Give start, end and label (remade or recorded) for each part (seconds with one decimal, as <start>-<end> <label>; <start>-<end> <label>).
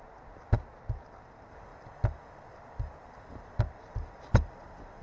0.0-5.0 recorded